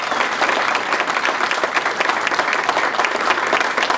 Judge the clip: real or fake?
real